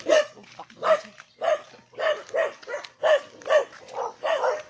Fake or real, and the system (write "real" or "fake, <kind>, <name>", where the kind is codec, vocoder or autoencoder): real